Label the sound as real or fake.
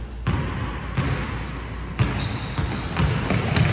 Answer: real